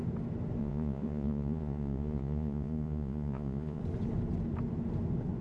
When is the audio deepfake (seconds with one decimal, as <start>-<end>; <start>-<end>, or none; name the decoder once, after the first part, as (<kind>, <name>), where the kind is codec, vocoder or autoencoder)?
0.6-3.8 (vocoder, Vocos)